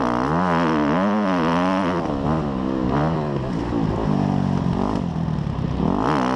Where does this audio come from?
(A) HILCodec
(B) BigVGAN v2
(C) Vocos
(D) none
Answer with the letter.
D